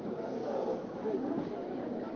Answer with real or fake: fake